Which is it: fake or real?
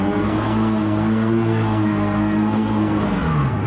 fake